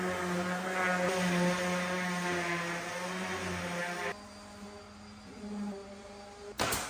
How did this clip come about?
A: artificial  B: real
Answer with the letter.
B